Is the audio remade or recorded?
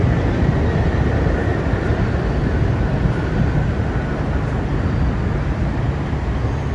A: recorded